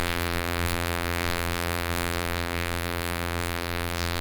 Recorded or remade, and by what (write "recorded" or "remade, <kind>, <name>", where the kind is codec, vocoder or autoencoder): remade, vocoder, BigVGAN v2